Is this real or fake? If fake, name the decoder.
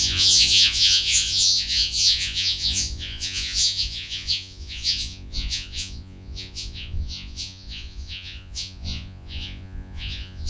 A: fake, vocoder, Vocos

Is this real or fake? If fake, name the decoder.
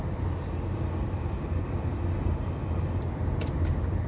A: real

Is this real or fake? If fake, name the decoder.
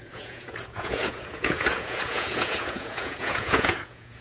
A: fake, vocoder, Vocos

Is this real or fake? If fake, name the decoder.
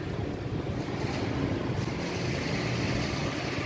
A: real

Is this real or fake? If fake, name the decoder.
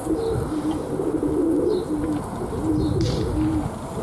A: real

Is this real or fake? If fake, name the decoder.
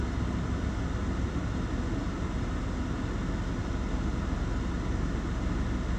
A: real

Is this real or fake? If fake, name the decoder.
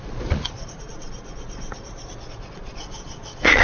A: fake, vocoder, Vocos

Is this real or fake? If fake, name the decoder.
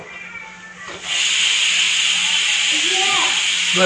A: real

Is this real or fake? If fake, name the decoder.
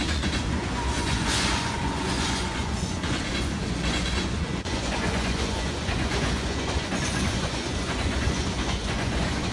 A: fake, vocoder, Vocos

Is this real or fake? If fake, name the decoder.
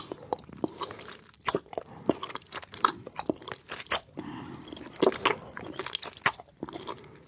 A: real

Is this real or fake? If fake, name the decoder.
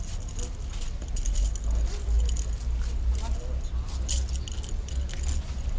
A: real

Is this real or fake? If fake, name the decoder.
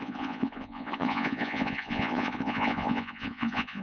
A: fake, vocoder, Vocos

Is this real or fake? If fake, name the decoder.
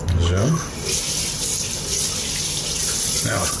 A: real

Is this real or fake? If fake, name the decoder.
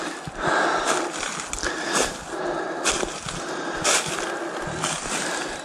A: real